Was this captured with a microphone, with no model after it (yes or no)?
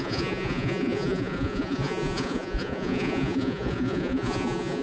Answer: no